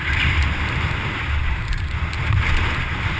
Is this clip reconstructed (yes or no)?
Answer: no